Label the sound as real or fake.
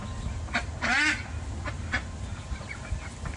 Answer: real